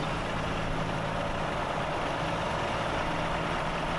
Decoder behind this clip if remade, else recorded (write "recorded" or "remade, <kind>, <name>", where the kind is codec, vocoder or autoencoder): remade, vocoder, BigVGAN v2